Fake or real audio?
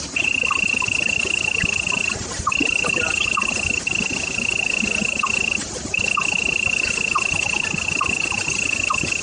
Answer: real